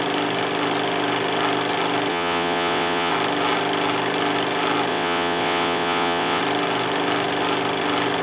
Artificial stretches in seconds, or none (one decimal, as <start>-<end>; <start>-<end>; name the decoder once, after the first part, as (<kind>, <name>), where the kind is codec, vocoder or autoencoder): 2.1-3.1 (vocoder, WaveNeXt); 4.9-6.4